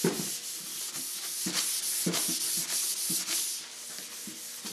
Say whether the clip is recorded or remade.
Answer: recorded